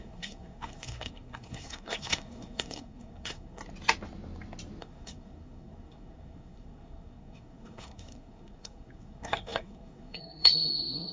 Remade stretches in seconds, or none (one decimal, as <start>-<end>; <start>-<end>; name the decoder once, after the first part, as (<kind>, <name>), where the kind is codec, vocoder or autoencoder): 0.0-3.6 (codec, SNAC); 4.8-11.1